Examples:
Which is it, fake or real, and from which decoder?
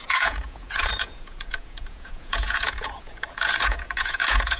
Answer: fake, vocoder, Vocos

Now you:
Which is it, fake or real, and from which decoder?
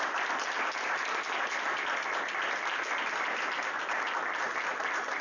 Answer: real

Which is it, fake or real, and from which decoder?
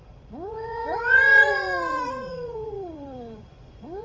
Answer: fake, vocoder, Vocos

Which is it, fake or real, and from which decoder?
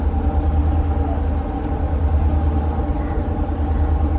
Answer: real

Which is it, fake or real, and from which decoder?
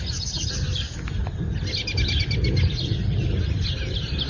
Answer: real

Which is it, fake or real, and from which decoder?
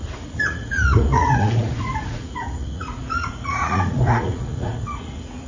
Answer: fake, vocoder, Vocos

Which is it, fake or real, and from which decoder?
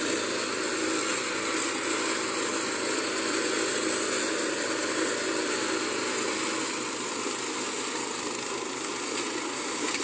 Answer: real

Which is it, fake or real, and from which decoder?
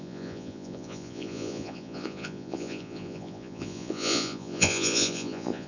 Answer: fake, vocoder, Vocos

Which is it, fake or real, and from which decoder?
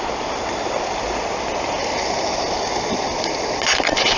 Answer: real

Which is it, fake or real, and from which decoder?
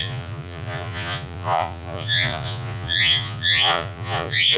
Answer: fake, vocoder, Vocos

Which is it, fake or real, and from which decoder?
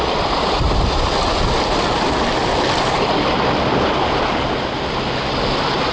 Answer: real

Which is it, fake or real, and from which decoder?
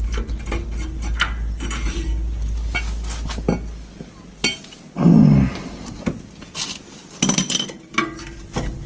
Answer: real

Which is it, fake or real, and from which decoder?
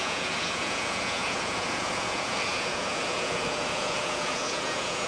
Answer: fake, vocoder, Vocos